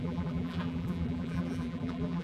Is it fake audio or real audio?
fake